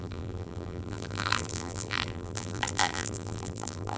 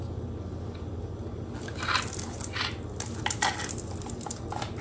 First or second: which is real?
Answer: second